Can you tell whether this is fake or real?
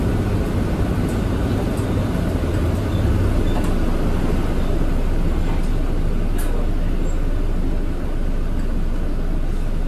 real